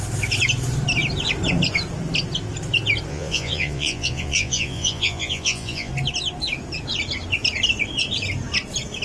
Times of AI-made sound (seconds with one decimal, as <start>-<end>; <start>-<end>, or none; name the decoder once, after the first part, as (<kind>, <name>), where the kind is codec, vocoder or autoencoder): 3.1-5.9 (vocoder, Vocos)